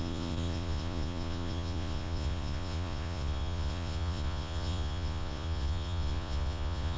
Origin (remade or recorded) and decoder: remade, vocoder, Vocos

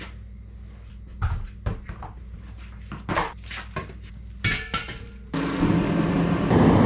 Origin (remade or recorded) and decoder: recorded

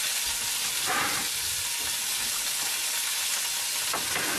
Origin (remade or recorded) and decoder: recorded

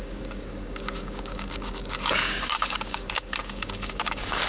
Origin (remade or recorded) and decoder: remade, codec, DAC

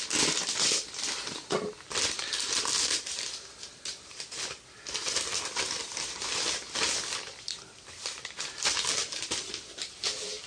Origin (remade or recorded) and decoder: recorded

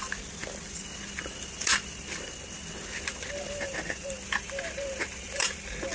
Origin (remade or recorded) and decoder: recorded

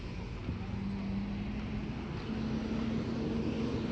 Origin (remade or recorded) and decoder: recorded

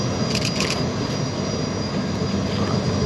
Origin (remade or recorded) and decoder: recorded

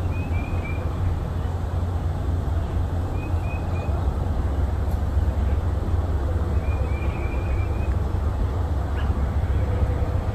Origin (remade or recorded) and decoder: recorded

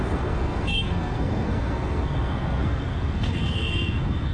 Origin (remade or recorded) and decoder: remade, codec, SNAC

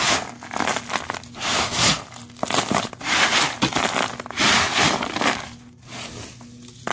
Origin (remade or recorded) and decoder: recorded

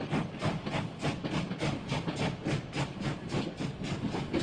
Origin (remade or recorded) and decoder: recorded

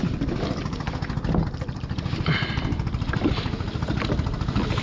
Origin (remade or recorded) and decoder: recorded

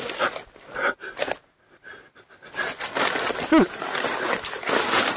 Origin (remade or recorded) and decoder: recorded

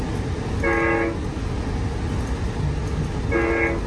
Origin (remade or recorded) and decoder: recorded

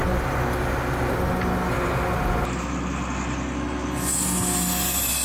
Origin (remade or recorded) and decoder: recorded